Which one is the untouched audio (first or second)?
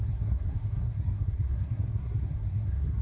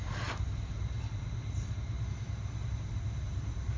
second